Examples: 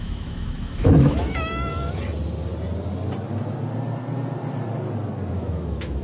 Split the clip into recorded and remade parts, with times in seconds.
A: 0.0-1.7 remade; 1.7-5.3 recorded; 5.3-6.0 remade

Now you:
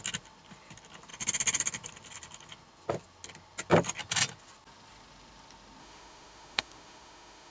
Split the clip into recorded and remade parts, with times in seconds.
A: 0.0-5.8 recorded; 5.8-7.5 remade